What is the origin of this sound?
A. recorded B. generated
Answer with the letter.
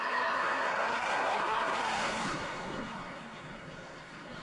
B